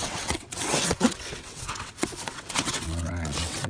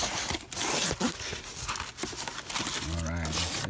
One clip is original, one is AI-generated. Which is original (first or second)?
second